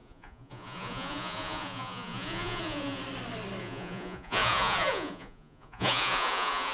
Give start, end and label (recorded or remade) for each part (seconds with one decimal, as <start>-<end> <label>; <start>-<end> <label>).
0.0-3.0 remade; 3.0-3.6 recorded; 3.6-6.7 remade

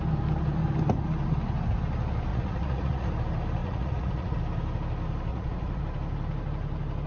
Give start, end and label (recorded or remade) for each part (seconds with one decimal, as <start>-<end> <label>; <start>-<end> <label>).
0.0-2.3 recorded; 2.3-3.1 remade; 3.1-3.6 recorded; 3.6-4.4 remade; 4.4-5.3 recorded; 5.3-5.8 remade; 5.8-7.1 recorded

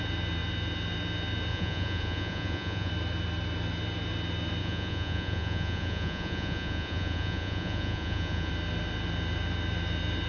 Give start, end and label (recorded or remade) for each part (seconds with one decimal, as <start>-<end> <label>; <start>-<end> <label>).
0.0-1.5 recorded; 1.5-2.9 remade; 2.9-4.6 recorded; 4.6-8.5 remade; 8.5-10.3 recorded

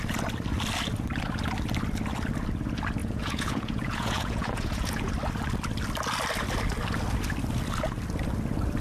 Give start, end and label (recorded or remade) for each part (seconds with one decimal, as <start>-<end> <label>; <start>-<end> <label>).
0.0-3.0 recorded; 3.0-5.1 remade; 5.1-8.8 recorded

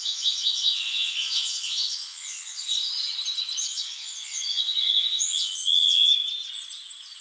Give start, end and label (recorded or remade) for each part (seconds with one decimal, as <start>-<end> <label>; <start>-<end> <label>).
0.0-2.9 remade; 2.9-3.6 recorded; 3.6-6.1 remade; 6.1-7.2 recorded

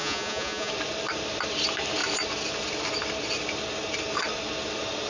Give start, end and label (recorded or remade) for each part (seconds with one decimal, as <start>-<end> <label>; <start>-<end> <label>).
0.0-0.7 remade; 0.7-5.1 recorded

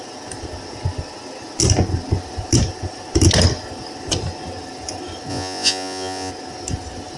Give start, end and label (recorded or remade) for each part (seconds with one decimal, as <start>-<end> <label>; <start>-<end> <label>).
0.0-5.3 recorded; 5.3-6.3 remade; 6.3-7.2 recorded